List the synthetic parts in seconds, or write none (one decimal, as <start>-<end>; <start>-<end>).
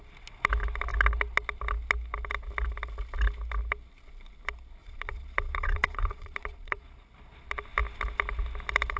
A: 4.8-7.1